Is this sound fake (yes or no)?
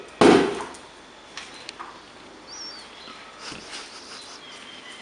no